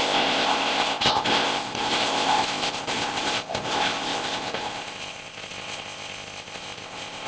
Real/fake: fake